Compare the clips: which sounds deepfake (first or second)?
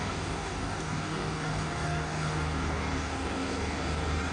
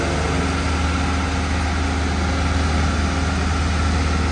first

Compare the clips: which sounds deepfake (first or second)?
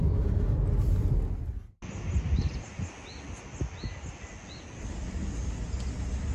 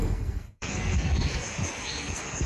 second